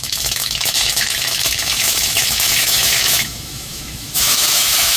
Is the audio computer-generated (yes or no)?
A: yes